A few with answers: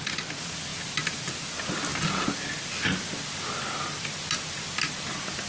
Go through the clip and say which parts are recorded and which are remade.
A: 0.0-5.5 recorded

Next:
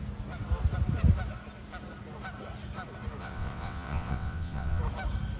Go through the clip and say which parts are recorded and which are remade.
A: 0.0-3.2 recorded; 3.2-4.8 remade; 4.8-5.4 recorded